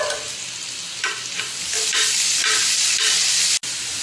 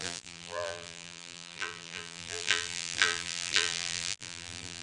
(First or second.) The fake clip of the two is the second